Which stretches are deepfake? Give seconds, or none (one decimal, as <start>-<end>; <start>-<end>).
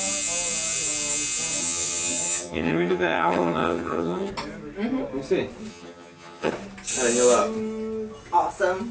1.6-4.3; 5.7-6.5